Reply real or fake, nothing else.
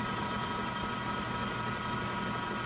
real